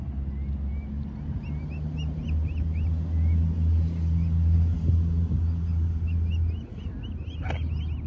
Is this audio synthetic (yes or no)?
no